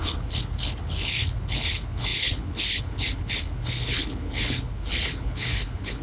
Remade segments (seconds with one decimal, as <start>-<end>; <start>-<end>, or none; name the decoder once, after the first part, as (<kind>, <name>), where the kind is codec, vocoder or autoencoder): 0.0-6.0 (codec, HILCodec)